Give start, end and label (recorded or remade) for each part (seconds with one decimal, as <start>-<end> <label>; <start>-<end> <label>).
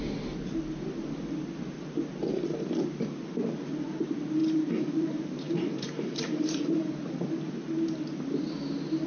0.0-4.4 recorded; 4.4-7.5 remade; 7.5-9.1 recorded